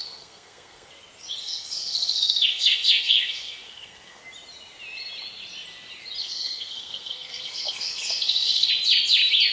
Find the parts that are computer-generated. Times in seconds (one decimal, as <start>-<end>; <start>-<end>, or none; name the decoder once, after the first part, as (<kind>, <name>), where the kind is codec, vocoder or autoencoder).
0.0-0.9 (codec, SNAC); 1.4-4.2; 6.2-8.7